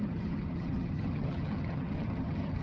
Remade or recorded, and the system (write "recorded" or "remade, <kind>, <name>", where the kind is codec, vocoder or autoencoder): remade, vocoder, HiFi-GAN